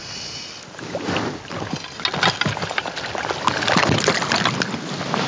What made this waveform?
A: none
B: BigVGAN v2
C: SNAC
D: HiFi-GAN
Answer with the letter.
A